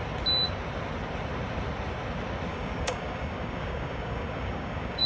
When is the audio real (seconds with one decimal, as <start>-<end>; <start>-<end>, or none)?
0.0-2.5